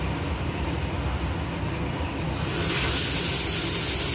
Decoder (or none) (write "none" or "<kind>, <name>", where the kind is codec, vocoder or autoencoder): none